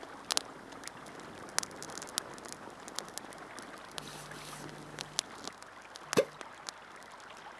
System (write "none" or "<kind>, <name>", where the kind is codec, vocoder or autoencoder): none